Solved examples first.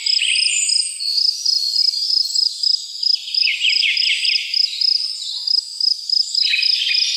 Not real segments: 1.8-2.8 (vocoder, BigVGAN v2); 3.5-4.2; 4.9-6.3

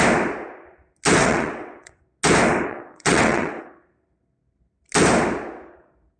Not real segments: 1.2-2.0 (vocoder, WaveNeXt); 2.7-3.5

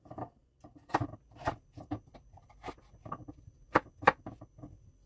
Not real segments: none

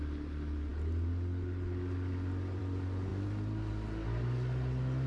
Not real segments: none

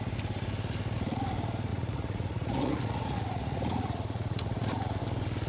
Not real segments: 1.7-5.0 (vocoder, Vocos)